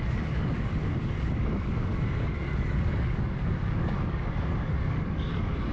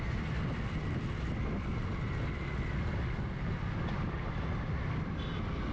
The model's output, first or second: first